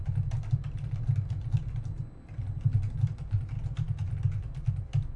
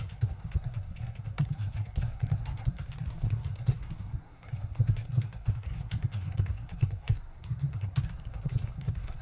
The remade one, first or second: second